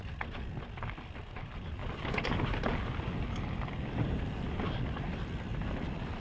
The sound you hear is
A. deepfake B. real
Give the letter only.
B